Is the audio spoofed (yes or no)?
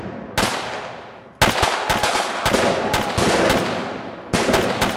no